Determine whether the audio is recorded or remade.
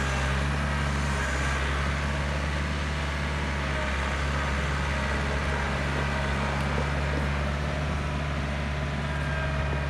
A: recorded